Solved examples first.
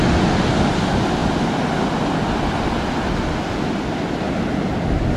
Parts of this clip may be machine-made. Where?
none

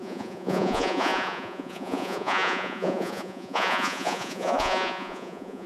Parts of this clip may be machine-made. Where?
0.0-5.7 (vocoder, Vocos)

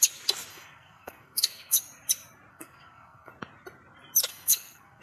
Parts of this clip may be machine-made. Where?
0.5-1.8 (codec, SNAC); 2.5-3.3; 4.3-5.0

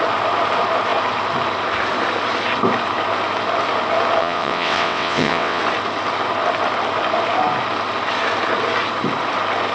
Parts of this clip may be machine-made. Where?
4.2-5.6 (vocoder, WaveNeXt)

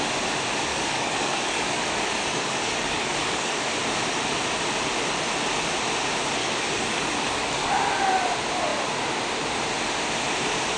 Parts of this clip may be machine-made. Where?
0.7-3.7 (codec, DAC); 6.4-7.7